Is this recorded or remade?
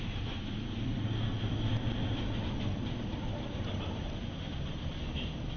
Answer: recorded